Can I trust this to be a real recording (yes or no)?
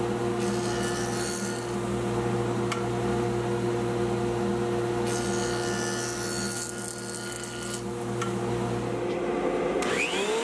yes